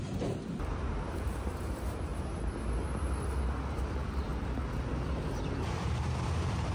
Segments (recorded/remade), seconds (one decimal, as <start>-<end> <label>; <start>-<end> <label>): 0.0-2.1 remade; 2.1-3.8 recorded; 3.8-4.3 remade; 4.3-5.3 recorded; 5.3-6.7 remade